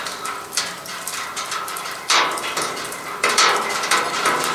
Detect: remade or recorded remade